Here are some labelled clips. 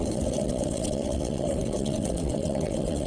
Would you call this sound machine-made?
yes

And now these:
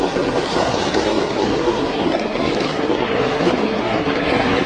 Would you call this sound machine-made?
yes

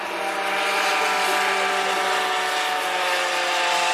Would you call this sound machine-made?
no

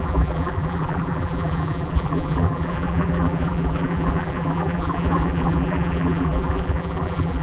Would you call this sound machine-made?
yes